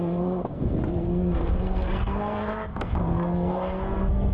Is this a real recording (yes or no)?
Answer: no